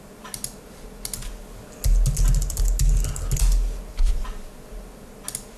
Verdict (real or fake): real